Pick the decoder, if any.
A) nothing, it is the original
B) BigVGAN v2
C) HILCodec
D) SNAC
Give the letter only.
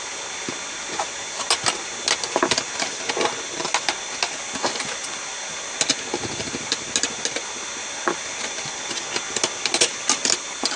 A